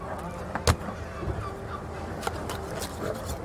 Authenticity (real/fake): real